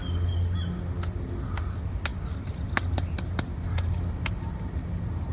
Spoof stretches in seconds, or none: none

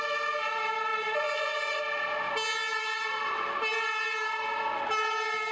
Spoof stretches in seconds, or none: 0.9-1.8 (vocoder, Vocos)